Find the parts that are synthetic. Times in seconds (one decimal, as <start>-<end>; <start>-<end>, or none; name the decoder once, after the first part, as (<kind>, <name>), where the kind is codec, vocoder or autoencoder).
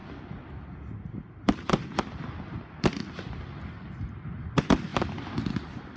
none